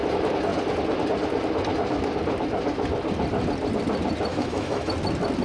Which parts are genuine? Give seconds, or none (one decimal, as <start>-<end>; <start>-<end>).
0.0-4.3; 4.9-5.4